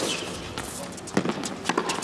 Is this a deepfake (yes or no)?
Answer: no